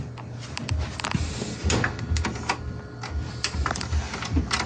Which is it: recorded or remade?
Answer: recorded